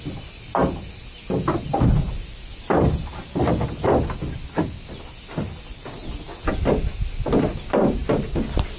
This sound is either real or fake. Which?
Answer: real